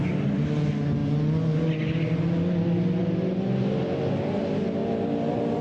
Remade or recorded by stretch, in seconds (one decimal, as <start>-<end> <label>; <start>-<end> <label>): 0.0-5.6 recorded